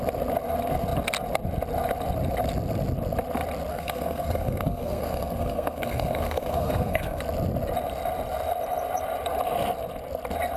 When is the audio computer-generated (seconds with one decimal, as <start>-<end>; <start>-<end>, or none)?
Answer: 3.7-7.2